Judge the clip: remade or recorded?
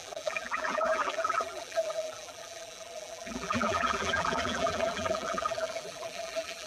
remade